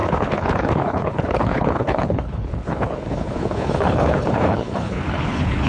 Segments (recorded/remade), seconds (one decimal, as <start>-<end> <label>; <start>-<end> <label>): 0.0-5.7 remade